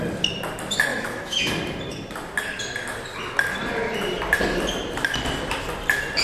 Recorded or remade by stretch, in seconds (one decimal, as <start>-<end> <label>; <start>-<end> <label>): 0.0-0.9 recorded; 0.9-1.5 remade; 1.5-6.2 recorded